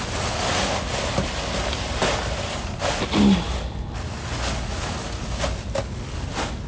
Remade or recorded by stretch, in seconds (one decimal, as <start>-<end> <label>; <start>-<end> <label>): 0.0-6.7 recorded